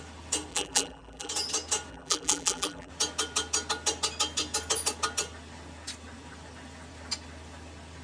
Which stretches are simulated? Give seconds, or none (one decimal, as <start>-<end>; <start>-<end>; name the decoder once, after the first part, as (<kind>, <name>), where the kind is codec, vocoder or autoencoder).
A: 0.5-1.3 (vocoder, BigVGAN v2); 1.9-2.9